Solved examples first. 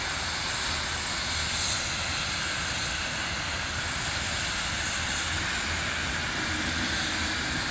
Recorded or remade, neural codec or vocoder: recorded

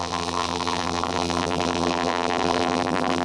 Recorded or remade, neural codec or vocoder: remade, vocoder, BigVGAN v2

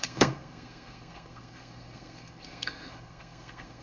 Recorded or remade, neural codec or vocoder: remade, codec, SNAC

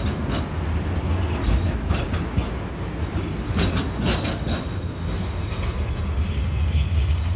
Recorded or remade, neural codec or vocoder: recorded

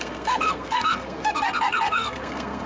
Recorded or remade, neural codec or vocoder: remade, codec, SNAC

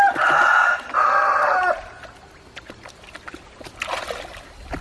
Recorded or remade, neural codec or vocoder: recorded